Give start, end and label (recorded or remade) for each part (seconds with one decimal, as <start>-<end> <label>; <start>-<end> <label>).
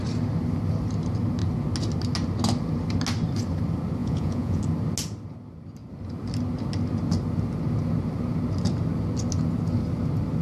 0.0-4.0 recorded; 4.0-4.6 remade; 4.6-10.4 recorded